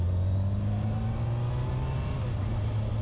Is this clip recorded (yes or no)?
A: yes